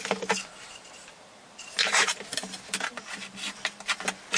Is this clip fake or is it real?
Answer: real